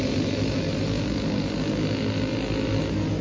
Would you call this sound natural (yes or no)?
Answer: yes